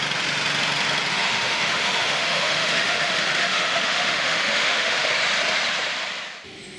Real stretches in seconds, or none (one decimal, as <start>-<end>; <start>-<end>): 0.0-1.1; 5.1-6.8